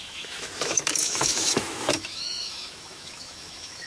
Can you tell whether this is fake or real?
fake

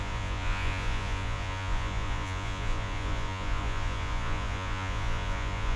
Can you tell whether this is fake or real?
fake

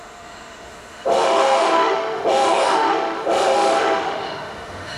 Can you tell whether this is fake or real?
fake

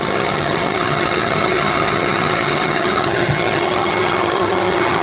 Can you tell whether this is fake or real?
fake